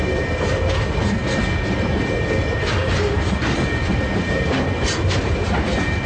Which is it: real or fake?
real